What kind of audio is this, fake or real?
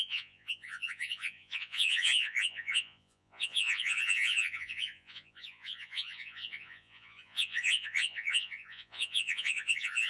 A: fake